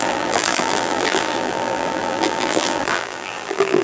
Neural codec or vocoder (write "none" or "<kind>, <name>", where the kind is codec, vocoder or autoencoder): vocoder, BigVGAN v2